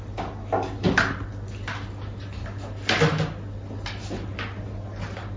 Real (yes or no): yes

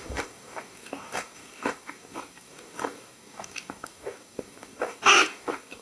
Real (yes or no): no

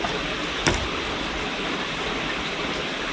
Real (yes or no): no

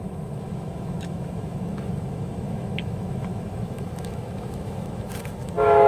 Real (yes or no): no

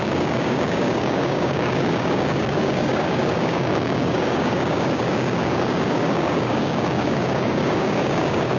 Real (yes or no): no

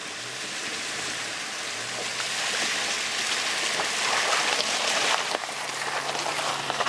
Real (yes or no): yes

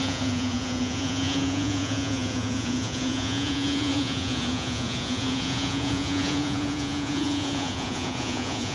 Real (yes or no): no